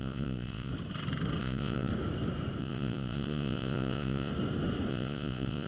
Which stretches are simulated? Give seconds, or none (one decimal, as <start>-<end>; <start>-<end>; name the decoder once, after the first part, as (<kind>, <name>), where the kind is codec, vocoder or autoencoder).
0.0-0.7 (vocoder, Vocos); 1.4-1.9; 2.6-4.3; 4.9-5.7